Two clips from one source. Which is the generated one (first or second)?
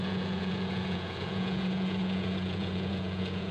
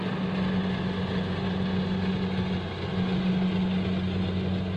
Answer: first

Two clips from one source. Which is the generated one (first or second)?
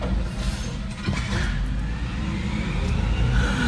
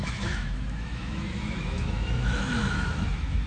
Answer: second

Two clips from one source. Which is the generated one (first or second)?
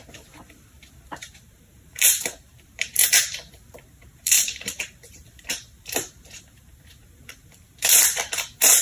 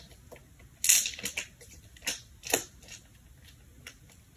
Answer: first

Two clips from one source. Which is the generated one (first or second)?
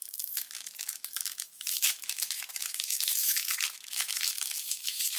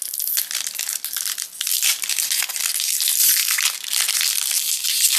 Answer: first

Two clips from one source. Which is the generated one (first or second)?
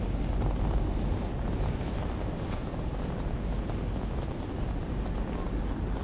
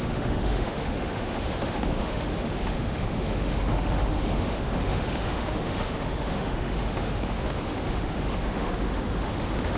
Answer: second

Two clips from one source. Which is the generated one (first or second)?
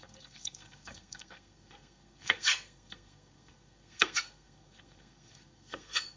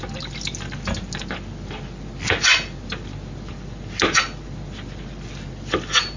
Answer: first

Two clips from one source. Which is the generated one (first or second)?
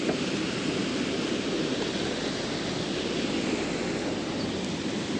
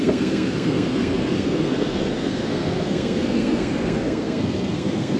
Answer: second